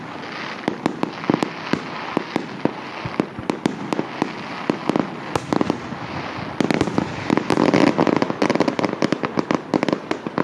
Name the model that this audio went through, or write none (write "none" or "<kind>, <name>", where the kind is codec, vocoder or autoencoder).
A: none